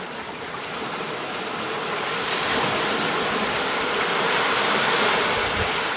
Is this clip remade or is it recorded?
recorded